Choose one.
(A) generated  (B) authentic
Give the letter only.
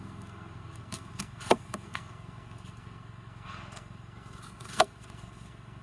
A